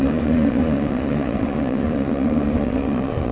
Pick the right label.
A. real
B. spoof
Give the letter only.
B